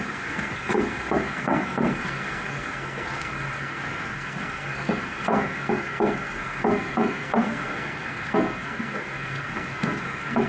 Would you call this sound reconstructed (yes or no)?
yes